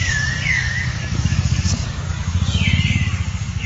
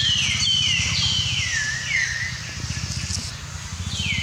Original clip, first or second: second